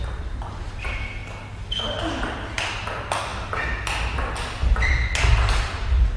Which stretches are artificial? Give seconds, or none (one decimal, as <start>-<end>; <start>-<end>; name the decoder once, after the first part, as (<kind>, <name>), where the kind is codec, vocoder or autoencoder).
0.0-1.2 (vocoder, BigVGAN v2); 2.2-3.3; 4.8-6.2